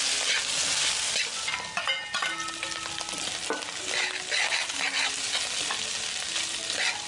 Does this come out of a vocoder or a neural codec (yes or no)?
no